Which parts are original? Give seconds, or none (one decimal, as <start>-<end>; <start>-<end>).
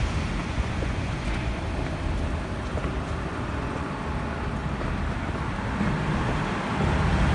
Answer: 0.0-0.4; 1.6-3.3; 3.9-7.3